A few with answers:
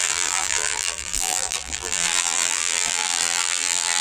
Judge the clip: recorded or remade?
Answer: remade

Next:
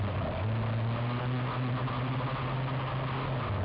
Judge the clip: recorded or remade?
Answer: recorded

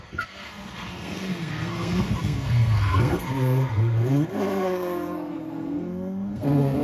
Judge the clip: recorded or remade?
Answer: remade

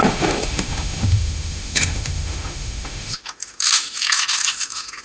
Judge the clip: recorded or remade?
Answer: remade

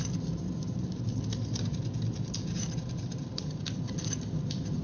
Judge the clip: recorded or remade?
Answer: remade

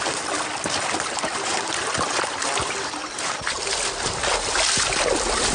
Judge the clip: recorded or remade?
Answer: recorded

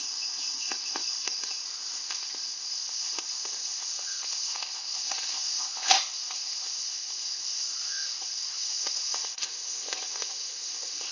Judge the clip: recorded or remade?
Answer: remade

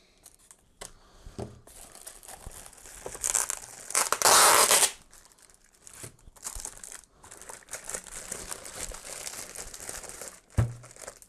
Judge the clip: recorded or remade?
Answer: recorded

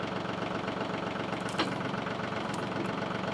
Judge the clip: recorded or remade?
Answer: remade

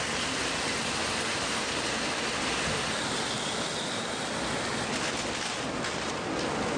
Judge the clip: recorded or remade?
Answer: recorded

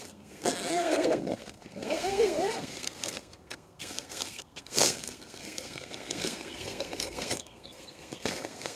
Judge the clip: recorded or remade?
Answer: remade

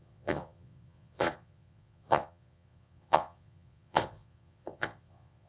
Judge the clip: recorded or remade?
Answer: remade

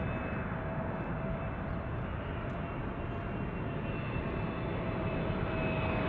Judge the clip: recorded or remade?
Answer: recorded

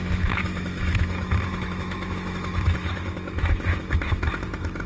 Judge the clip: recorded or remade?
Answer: remade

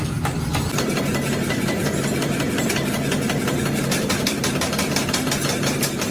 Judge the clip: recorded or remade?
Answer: recorded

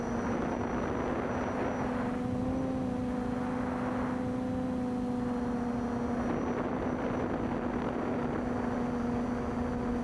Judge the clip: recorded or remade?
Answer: recorded